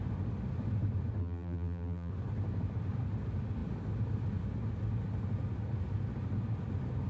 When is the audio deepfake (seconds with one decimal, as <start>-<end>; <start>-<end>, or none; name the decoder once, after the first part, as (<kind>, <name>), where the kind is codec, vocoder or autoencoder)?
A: 1.2-2.1 (vocoder, BigVGAN v2)